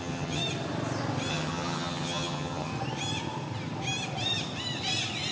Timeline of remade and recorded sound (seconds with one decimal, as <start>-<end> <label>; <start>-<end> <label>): 0.0-0.4 remade; 0.4-1.3 recorded; 1.3-2.7 remade; 2.7-5.3 recorded

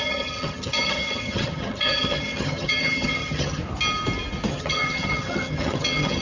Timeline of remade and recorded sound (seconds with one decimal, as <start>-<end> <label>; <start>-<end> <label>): 0.0-3.6 remade; 3.6-4.5 recorded; 4.5-6.2 remade

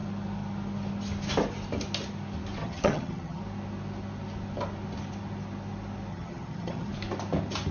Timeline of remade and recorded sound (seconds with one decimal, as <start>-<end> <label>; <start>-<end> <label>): 0.0-2.6 recorded; 2.6-3.4 remade; 3.4-6.1 recorded; 6.1-6.9 remade; 6.9-7.7 recorded